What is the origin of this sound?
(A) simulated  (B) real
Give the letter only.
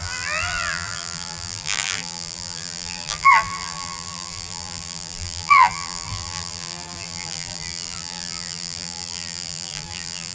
A